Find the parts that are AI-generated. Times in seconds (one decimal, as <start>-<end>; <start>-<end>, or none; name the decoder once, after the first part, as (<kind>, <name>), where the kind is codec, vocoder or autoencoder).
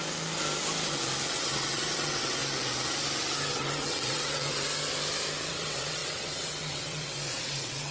1.3-2.4 (vocoder, WaveNeXt); 3.5-4.6; 5.5-7.9